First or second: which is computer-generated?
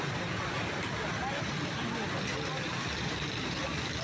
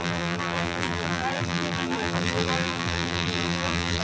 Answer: second